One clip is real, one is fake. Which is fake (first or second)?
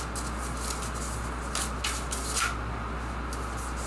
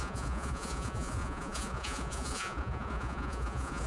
second